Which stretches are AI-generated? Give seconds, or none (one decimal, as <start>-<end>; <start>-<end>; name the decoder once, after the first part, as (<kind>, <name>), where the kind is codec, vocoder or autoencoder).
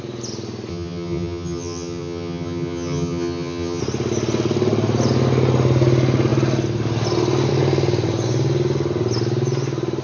0.7-3.8 (vocoder, HiFi-GAN)